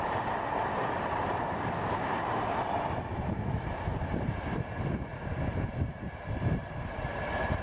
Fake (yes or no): yes